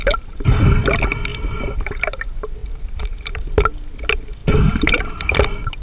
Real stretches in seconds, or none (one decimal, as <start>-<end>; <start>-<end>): 0.0-1.3; 2.2-2.6; 3.3-5.8